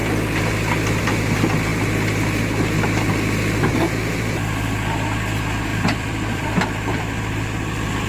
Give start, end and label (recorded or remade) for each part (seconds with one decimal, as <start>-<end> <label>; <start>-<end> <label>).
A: 0.0-1.0 remade; 1.0-5.7 recorded; 5.7-7.0 remade; 7.0-8.1 recorded